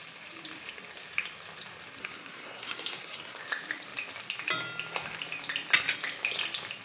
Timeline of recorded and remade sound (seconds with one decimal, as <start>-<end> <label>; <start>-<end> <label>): 0.0-2.0 recorded; 2.0-3.4 remade; 3.4-6.8 recorded